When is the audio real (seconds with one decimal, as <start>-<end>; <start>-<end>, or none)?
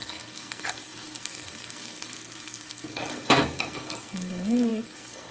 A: none